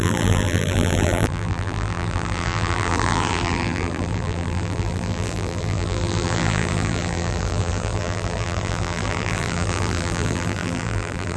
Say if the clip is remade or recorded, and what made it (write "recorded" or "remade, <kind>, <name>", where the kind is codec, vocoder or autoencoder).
remade, vocoder, BigVGAN v2